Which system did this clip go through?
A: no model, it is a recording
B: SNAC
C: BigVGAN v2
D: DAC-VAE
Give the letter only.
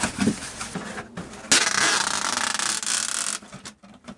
A